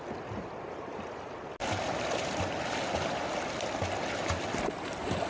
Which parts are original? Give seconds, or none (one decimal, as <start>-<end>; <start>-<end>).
0.0-1.6; 2.4-5.3